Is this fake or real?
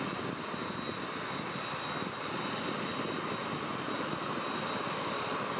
real